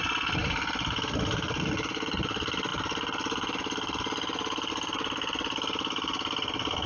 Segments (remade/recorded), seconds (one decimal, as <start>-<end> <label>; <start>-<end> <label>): 0.0-6.9 recorded